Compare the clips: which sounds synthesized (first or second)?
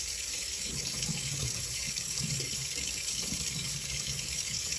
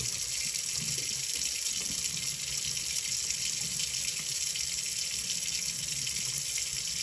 first